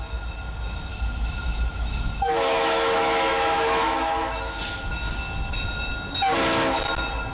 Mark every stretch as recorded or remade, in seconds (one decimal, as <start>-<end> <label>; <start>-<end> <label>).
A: 0.0-0.9 recorded; 0.9-4.6 remade; 4.6-7.3 recorded